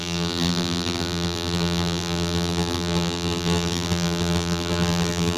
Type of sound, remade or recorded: remade